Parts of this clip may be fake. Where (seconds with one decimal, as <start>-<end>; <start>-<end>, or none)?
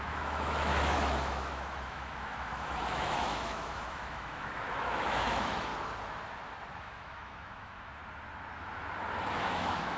0.0-5.7; 6.8-8.0; 9.3-10.0